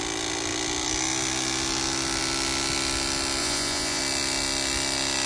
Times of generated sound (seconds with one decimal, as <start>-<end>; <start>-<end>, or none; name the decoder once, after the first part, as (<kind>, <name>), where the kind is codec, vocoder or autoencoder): 3.4-4.0 (vocoder, Vocos)